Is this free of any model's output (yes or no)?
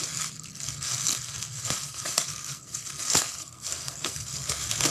no